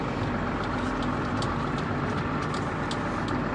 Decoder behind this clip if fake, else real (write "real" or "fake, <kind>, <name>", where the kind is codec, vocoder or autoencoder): real